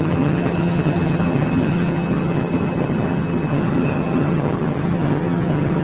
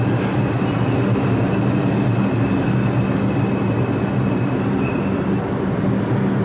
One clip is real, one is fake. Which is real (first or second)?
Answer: second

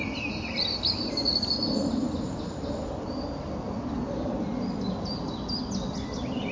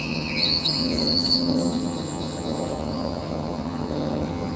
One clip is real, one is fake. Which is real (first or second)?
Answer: first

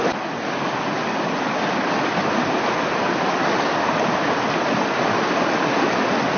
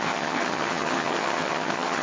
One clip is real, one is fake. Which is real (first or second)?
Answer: first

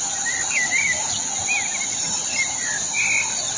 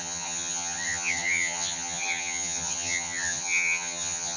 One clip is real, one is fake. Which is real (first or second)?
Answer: first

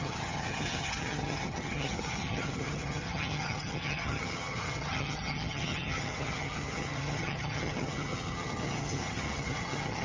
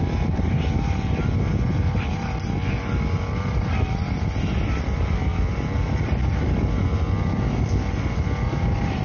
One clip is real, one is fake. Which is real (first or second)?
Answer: second